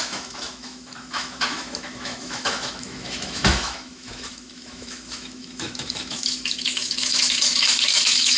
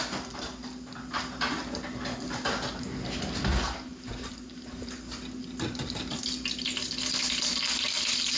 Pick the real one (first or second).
second